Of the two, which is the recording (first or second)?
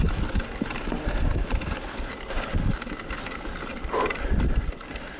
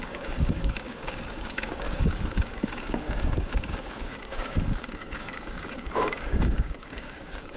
first